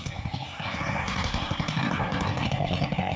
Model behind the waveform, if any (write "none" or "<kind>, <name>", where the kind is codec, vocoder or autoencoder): codec, SNAC